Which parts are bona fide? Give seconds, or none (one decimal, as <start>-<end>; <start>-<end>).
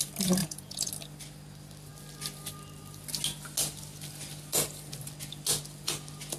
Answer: 0.0-0.4; 0.9-6.4